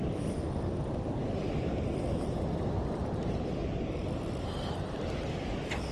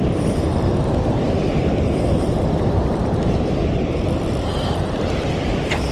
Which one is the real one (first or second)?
first